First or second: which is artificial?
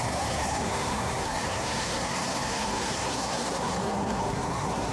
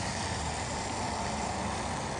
first